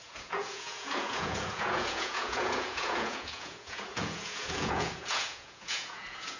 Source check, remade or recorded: remade